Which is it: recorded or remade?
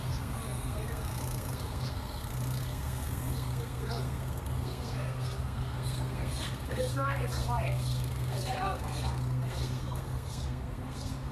remade